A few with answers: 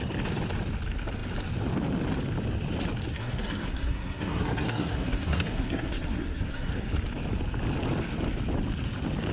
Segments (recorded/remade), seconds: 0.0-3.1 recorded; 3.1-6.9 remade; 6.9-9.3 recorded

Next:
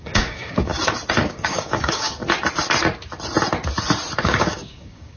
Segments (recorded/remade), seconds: 0.0-0.7 remade; 0.7-1.3 recorded; 1.3-2.2 remade; 2.2-4.2 recorded; 4.2-5.2 remade

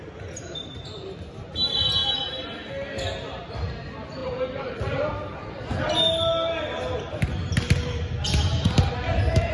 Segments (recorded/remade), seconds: 0.0-9.5 recorded

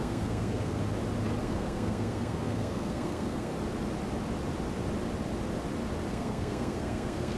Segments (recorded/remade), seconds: 0.0-0.8 remade; 0.8-1.4 recorded; 1.4-3.5 remade; 3.5-6.1 recorded; 6.1-7.4 remade

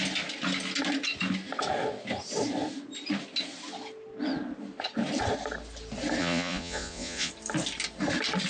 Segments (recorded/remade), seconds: 0.0-6.2 recorded; 6.2-7.3 remade; 7.3-8.5 recorded

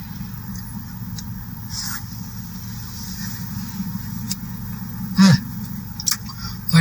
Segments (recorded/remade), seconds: 0.0-3.2 recorded; 3.2-5.8 remade; 5.8-6.8 recorded